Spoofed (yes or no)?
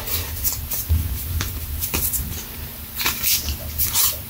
yes